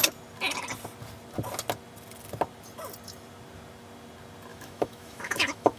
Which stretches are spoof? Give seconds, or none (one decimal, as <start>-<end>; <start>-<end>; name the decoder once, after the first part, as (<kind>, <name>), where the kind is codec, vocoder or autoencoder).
4.5-5.8 (autoencoder, DAC-VAE)